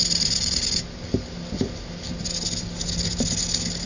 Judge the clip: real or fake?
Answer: real